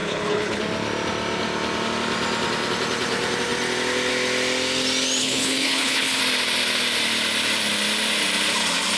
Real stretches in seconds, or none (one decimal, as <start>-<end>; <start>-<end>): 0.6-5.2; 6.2-9.0